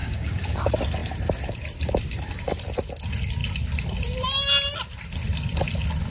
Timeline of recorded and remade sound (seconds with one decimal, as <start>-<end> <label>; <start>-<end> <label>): 0.0-0.6 remade; 0.6-6.1 recorded